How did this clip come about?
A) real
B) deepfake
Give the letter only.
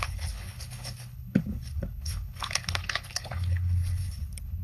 B